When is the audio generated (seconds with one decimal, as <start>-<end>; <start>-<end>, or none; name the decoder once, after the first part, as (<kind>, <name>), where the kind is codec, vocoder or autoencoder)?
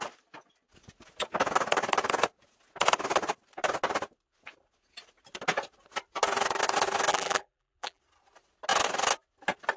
7.1-8.0 (vocoder, BigVGAN v2)